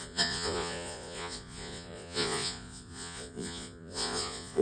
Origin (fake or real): fake